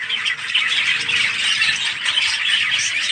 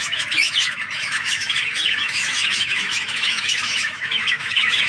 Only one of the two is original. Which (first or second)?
first